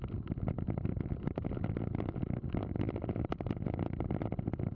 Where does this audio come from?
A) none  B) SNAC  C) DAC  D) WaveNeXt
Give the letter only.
A